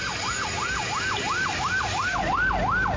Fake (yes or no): no